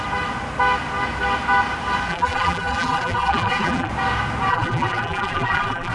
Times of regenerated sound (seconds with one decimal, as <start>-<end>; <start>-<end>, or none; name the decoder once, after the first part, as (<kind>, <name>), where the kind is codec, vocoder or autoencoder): 2.1-3.9 (vocoder, BigVGAN v2); 4.5-5.9